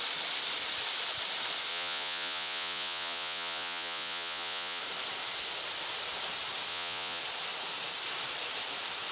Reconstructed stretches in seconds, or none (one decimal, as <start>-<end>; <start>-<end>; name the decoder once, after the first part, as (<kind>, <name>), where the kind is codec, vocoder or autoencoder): 1.7-4.8 (vocoder, Vocos); 6.7-7.2